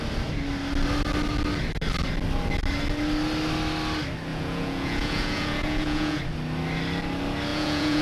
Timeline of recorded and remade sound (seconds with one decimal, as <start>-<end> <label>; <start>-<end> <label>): 0.0-4.3 recorded; 4.3-6.2 remade; 6.2-7.5 recorded; 7.5-8.0 remade